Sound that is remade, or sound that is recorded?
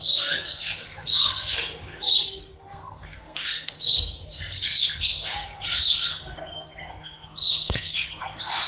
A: remade